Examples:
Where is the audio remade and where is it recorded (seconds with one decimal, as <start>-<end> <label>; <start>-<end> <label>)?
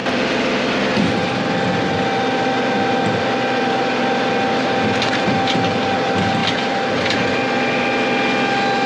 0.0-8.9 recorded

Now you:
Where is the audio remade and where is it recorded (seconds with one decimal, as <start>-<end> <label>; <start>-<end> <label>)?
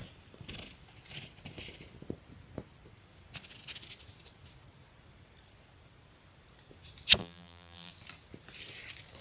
0.0-7.2 recorded; 7.2-7.9 remade; 7.9-9.2 recorded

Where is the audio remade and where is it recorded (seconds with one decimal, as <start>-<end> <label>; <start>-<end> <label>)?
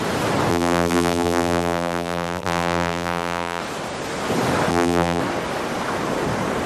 0.0-0.5 recorded; 0.5-3.6 remade; 3.6-4.7 recorded; 4.7-5.2 remade; 5.2-6.7 recorded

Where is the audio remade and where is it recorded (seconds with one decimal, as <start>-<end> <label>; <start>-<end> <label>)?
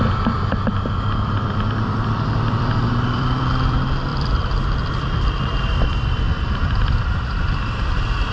0.0-8.3 remade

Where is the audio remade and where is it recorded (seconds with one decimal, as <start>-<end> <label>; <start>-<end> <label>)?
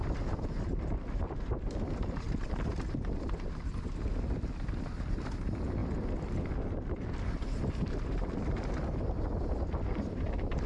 0.0-10.7 recorded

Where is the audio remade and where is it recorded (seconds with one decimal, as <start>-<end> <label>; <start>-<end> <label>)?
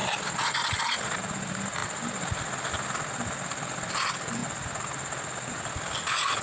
0.0-0.8 recorded; 0.8-1.8 remade; 1.8-4.0 recorded; 4.0-4.4 remade; 4.4-5.5 recorded; 5.5-6.4 remade